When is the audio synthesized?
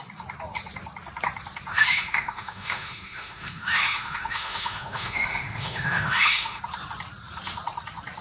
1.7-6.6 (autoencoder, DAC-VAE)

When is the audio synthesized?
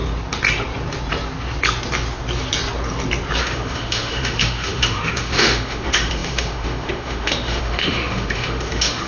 3.4-9.1 (autoencoder, DAC-VAE)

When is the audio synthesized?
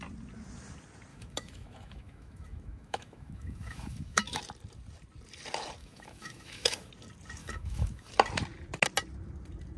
1.1-4.4 (autoencoder, DAC-VAE); 5.8-6.9; 7.4-8.1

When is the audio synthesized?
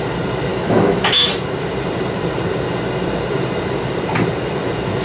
0.5-1.3 (autoencoder, DAC-VAE)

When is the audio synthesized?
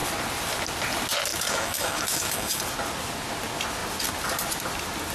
1.3-2.6 (autoencoder, DAC-VAE)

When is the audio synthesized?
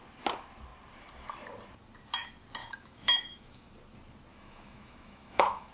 2.6-3.7 (autoencoder, DAC-VAE); 4.3-5.7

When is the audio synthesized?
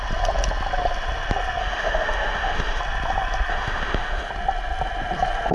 1.6-2.8 (autoencoder, DAC-VAE); 3.5-4.3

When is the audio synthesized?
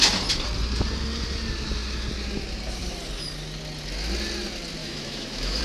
4.8-5.6 (autoencoder, DAC-VAE)